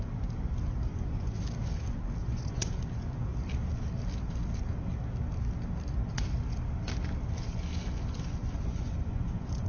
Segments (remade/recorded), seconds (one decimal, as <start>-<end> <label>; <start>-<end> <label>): 0.0-0.9 recorded; 0.9-1.4 remade; 1.4-2.2 recorded; 2.2-2.7 remade; 2.7-8.4 recorded; 8.4-9.7 remade